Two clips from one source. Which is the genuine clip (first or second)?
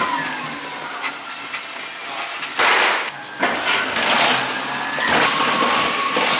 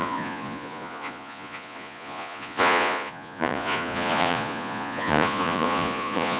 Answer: first